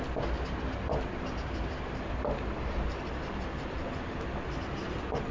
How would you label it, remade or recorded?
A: recorded